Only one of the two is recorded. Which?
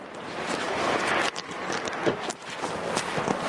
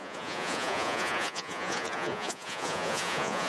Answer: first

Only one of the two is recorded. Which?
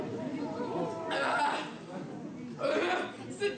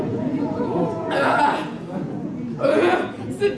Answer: first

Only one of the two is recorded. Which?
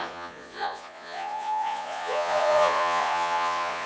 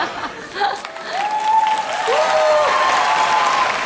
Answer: second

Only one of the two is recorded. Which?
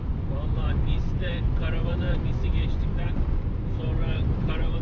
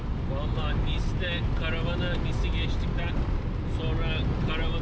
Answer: second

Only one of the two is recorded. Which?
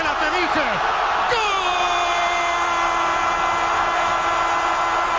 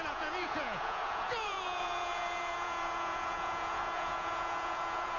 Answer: first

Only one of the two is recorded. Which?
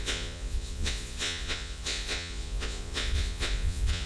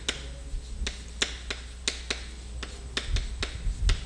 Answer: second